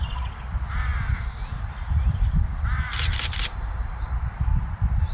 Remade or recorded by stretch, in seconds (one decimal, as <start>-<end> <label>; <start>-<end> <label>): 0.0-5.1 recorded